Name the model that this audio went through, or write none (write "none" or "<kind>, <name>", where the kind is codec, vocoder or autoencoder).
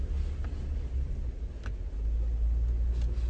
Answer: none